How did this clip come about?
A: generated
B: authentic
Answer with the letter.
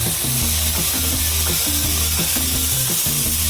B